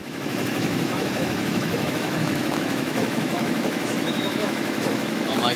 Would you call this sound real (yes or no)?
no